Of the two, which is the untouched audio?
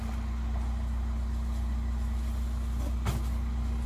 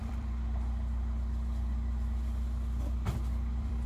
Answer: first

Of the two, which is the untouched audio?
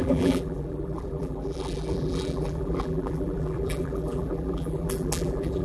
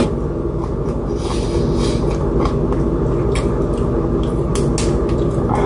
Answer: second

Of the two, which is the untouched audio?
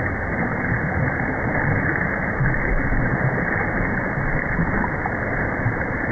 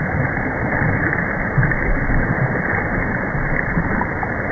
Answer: first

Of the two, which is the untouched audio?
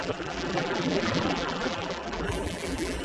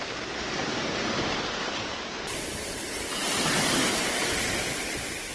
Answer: second